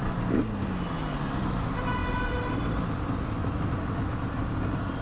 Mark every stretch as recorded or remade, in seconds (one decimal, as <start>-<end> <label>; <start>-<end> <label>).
0.0-5.0 recorded